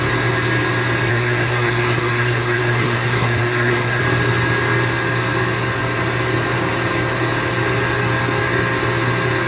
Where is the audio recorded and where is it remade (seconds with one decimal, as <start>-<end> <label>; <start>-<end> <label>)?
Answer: 0.0-1.1 recorded; 1.1-4.0 remade; 4.0-9.5 recorded